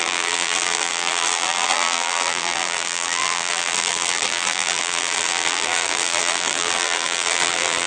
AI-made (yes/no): yes